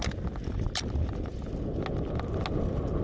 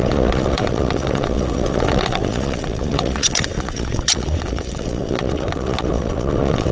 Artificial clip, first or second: second